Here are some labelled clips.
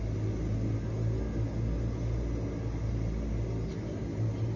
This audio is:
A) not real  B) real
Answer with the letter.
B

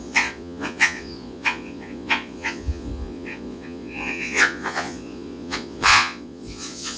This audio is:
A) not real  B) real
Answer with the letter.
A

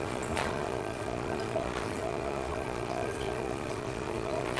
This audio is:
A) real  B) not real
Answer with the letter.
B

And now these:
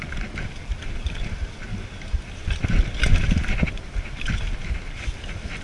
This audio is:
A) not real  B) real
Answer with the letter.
B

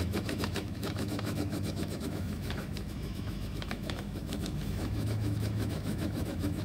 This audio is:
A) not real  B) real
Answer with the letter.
A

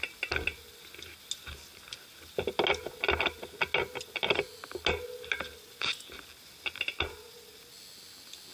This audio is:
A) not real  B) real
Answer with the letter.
B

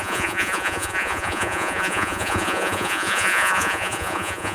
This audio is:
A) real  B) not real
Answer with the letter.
B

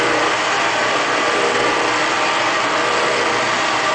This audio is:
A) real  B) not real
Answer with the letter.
A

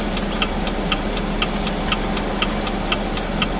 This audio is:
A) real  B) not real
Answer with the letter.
A